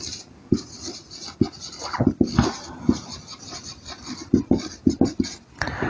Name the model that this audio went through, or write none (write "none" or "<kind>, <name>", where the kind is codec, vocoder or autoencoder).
none